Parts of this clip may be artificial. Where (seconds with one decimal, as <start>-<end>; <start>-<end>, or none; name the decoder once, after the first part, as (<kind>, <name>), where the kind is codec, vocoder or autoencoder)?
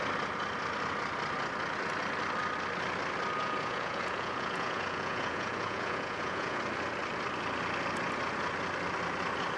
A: 3.4-6.6 (vocoder, Vocos)